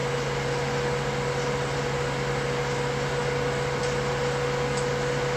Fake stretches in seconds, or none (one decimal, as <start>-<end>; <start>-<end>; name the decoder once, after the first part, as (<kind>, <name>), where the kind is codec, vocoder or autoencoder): none